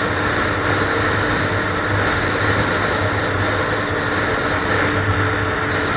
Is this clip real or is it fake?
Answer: real